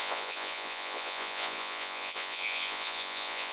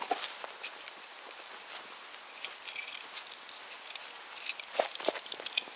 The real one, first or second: second